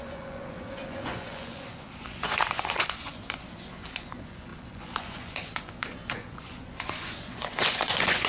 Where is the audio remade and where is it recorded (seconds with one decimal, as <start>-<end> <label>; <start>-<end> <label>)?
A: 0.0-8.3 remade